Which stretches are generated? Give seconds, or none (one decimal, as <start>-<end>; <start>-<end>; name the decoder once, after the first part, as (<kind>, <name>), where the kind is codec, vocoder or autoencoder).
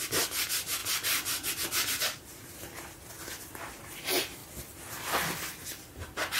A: none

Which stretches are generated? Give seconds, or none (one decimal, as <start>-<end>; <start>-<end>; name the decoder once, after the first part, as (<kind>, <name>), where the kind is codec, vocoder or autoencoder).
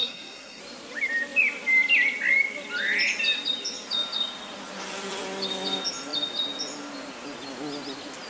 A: 0.0-0.6 (codec, SNAC)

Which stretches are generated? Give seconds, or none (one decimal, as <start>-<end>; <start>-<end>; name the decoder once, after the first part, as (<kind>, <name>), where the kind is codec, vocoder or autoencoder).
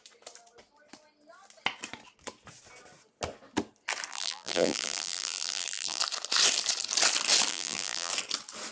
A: 4.1-6.0 (vocoder, BigVGAN v2); 7.5-8.1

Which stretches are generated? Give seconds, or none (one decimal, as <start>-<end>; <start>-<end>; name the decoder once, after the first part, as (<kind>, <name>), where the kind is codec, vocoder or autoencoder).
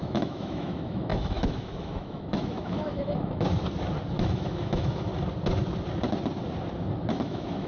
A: 0.0-3.6 (autoencoder, DAC-VAE); 4.2-5.1; 7.1-7.7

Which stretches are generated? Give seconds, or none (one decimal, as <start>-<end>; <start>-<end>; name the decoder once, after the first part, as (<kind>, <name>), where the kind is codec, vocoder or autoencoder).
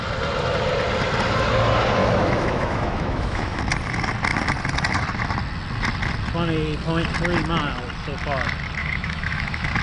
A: 2.0-3.6 (autoencoder, DAC-VAE); 8.8-9.8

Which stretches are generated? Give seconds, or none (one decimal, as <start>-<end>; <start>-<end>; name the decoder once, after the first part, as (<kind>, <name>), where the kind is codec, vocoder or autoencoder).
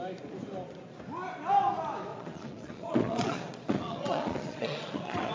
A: 2.1-5.3 (vocoder, Vocos)